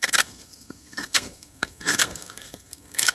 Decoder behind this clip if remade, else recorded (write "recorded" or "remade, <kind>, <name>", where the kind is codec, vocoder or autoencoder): remade, codec, SNAC